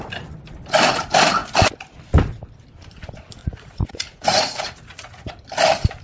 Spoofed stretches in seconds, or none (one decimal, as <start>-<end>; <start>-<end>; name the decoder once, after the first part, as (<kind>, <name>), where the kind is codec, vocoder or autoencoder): 3.4-5.3 (vocoder, Vocos)